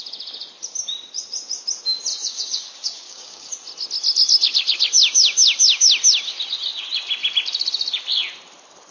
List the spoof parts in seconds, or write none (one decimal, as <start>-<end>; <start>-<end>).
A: 2.1-3.5